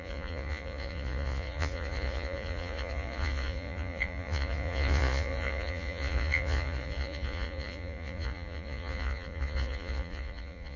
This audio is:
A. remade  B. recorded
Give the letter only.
A